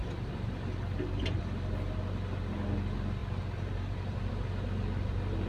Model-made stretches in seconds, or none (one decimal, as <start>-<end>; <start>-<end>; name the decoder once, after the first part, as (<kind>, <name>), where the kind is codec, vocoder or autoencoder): 0.0-1.4 (vocoder, BigVGAN v2); 3.2-4.3